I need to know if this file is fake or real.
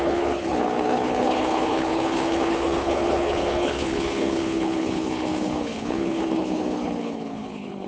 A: fake